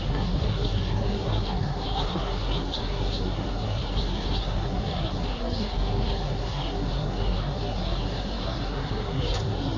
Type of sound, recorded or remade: remade